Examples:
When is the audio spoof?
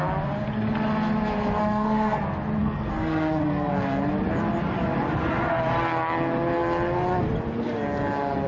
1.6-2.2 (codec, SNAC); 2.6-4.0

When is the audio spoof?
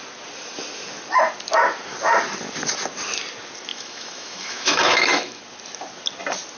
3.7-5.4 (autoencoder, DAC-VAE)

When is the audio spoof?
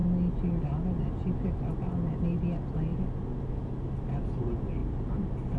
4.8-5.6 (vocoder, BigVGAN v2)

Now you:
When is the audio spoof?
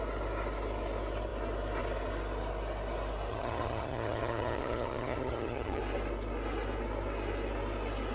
3.3-5.8 (vocoder, HiFi-GAN)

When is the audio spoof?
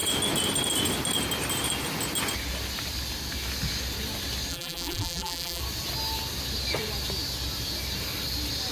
4.5-5.6 (vocoder, BigVGAN v2)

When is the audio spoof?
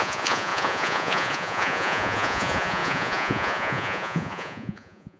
0.0-5.2 (vocoder, Vocos)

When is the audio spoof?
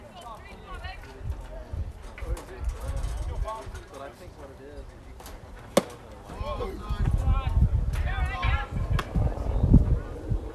none